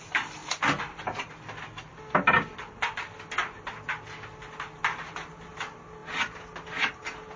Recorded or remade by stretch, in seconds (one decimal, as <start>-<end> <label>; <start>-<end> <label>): 0.0-7.4 recorded